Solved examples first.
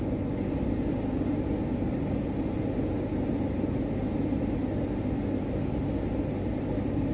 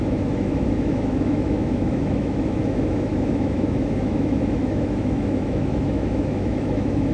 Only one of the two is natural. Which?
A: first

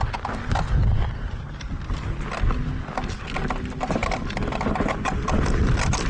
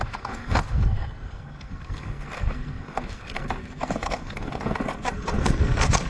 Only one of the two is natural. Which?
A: first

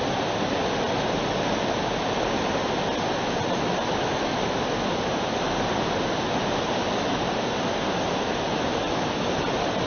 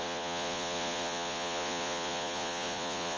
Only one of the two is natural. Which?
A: first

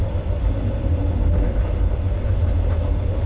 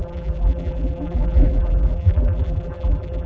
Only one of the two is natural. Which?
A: first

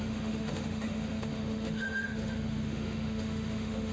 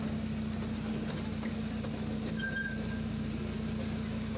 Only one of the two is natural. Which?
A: second